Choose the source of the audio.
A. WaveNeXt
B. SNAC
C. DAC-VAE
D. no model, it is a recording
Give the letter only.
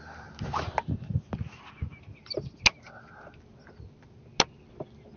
D